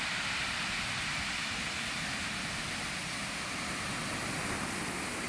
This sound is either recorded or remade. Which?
recorded